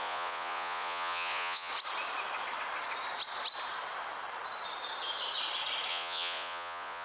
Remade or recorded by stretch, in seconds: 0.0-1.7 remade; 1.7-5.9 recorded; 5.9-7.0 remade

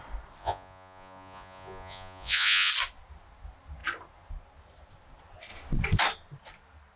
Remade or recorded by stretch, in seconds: 0.0-0.4 recorded; 0.4-2.7 remade; 2.7-7.0 recorded